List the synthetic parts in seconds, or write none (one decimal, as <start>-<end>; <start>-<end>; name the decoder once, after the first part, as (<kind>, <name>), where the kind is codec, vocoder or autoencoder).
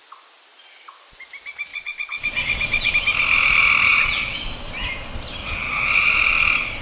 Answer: 1.7-2.9 (vocoder, Vocos); 3.9-4.4; 5.4-6.3